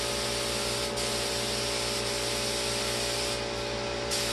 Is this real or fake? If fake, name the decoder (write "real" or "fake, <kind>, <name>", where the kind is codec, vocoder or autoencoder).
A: real